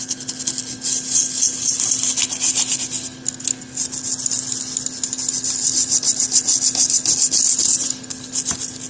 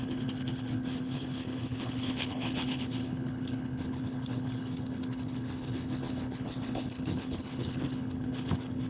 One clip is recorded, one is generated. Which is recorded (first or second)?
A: first